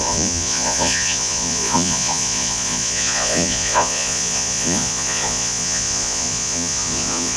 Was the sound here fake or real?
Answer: fake